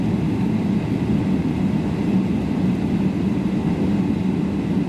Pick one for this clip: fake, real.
real